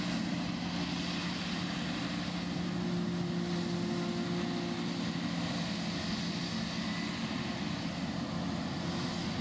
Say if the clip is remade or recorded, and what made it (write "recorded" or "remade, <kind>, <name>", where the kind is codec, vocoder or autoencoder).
recorded